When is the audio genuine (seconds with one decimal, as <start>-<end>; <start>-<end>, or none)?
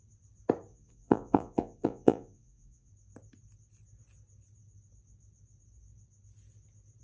0.0-0.7; 2.9-7.0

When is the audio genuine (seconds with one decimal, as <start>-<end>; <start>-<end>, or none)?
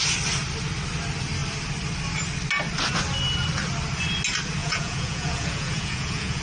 0.0-4.6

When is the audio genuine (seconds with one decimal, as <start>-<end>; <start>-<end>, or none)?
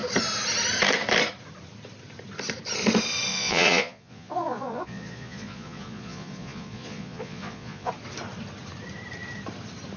0.0-3.3; 7.9-10.0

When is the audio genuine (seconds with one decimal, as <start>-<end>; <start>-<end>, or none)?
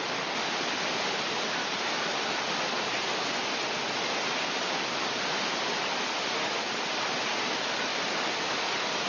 0.0-9.1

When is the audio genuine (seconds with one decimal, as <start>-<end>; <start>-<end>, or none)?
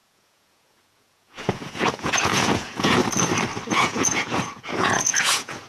3.0-3.7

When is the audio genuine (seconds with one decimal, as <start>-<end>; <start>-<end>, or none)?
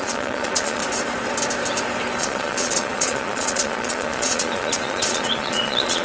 0.8-2.2